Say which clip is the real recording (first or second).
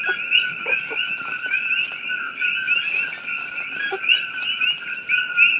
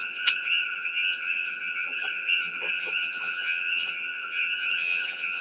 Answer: first